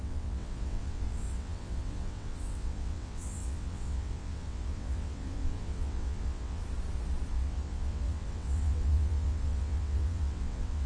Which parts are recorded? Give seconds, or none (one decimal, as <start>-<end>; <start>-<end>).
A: 6.6-7.3